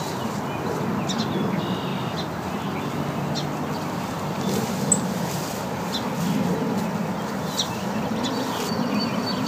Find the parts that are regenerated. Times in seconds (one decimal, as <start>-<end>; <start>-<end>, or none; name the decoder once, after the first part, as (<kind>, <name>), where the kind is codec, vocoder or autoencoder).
1.9-2.6 (vocoder, BigVGAN v2)